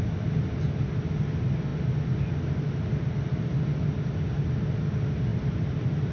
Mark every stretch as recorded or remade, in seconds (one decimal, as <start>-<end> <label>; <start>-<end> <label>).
0.0-6.1 recorded